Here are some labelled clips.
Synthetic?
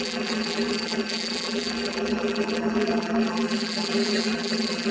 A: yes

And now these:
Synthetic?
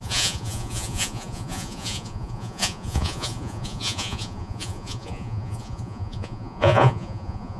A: yes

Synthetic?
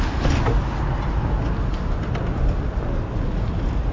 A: no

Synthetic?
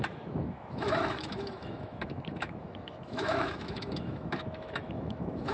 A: yes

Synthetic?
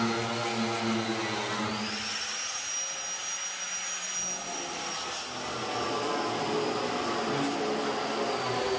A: no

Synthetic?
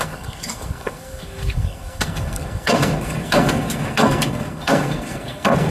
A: yes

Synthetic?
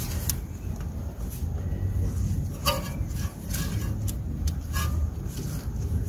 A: no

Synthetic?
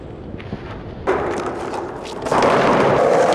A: no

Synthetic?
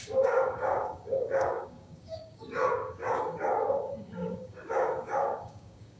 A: yes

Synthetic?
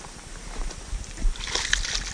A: no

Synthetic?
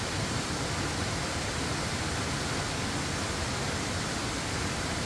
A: no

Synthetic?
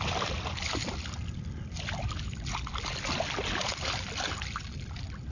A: no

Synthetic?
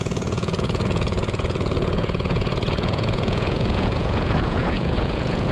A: yes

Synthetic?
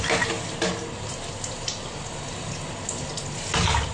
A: no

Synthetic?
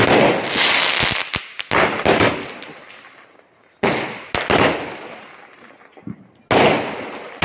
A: no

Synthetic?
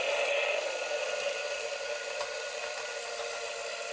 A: no